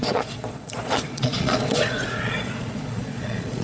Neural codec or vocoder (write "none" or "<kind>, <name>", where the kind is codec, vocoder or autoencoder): vocoder, Vocos